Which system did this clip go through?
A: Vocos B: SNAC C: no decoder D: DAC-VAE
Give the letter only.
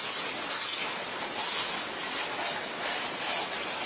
C